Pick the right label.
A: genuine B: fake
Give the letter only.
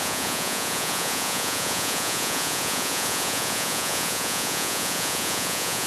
B